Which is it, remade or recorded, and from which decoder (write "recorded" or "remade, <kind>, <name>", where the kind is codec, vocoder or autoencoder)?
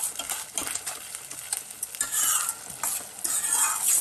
recorded